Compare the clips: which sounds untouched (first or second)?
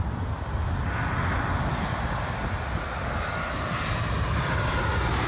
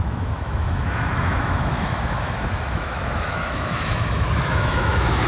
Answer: first